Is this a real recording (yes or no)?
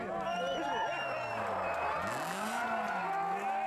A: yes